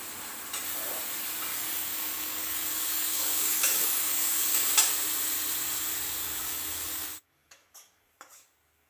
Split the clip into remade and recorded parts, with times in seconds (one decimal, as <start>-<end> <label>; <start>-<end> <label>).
0.0-1.5 recorded; 1.5-4.7 remade; 4.7-6.2 recorded; 6.2-8.9 remade